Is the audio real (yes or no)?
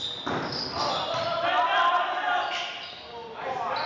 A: yes